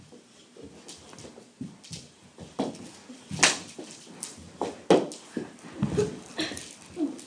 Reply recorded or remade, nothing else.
recorded